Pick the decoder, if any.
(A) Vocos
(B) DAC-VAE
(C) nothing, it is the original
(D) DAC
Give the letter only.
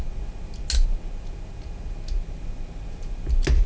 C